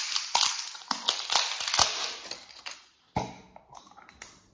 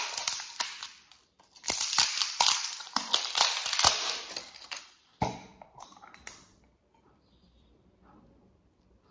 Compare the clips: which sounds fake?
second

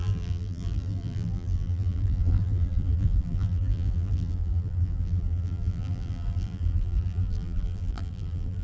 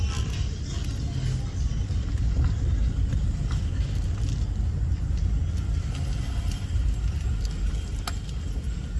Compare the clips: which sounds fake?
first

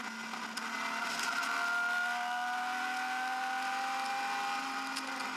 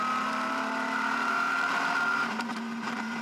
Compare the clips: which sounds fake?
second